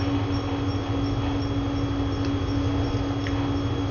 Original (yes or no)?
yes